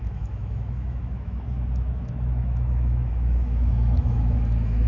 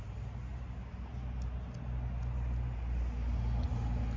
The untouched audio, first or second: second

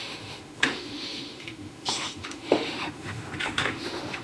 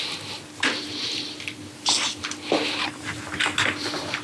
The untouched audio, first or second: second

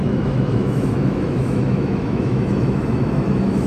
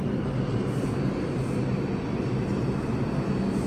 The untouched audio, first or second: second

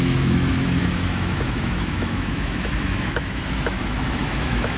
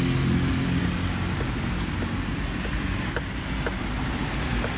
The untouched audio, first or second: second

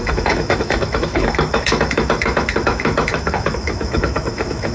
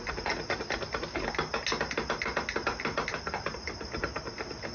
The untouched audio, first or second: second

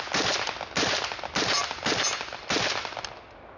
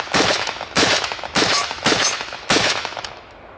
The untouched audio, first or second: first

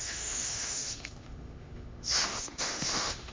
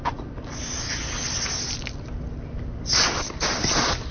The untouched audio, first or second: second